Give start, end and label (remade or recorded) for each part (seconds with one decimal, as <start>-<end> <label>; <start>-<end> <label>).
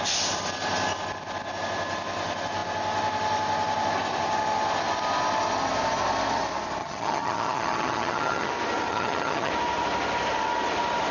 0.0-6.8 recorded; 6.8-8.5 remade; 8.5-8.9 recorded; 8.9-9.5 remade; 9.5-11.1 recorded